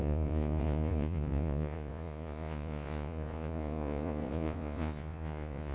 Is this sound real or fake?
fake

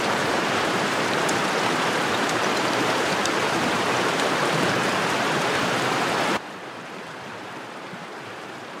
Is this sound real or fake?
fake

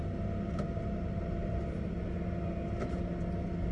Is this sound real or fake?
real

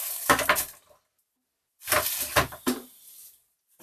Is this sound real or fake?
real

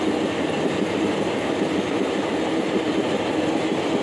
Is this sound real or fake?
real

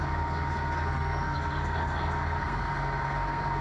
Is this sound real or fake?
fake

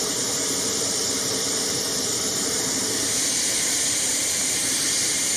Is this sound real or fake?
fake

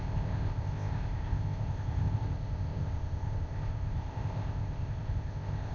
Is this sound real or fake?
fake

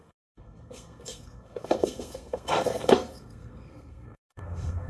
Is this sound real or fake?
fake